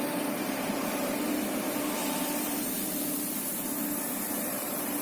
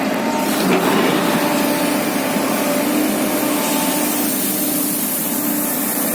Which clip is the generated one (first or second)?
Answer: first